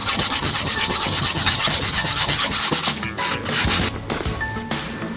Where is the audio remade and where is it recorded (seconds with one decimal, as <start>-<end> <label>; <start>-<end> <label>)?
0.0-2.6 remade; 2.6-5.2 recorded

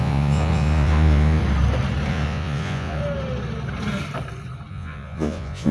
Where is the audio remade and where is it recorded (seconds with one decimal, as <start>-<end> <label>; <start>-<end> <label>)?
0.0-1.4 remade; 1.4-2.1 recorded; 2.1-3.0 remade; 3.0-4.7 recorded; 4.7-5.7 remade

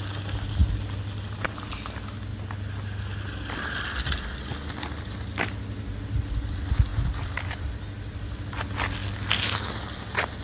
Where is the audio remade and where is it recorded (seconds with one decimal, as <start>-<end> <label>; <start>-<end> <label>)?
0.0-9.0 recorded; 9.0-9.7 remade; 9.7-10.4 recorded

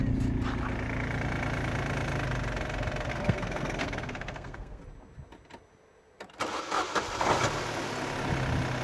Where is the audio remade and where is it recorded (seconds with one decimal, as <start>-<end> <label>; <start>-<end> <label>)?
0.0-3.1 recorded; 3.1-4.8 remade; 4.8-8.8 recorded

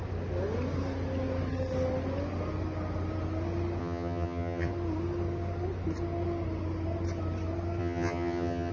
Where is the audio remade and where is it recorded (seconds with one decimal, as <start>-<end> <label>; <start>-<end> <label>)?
0.0-3.8 recorded; 3.8-4.7 remade; 4.7-7.8 recorded; 7.8-8.7 remade

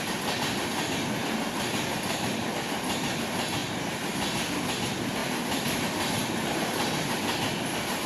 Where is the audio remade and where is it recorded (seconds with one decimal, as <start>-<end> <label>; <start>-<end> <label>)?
0.0-1.2 recorded; 1.2-2.5 remade; 2.5-5.2 recorded; 5.2-8.1 remade